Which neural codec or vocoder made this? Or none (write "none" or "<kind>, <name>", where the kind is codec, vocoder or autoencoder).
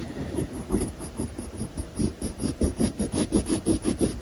vocoder, BigVGAN v2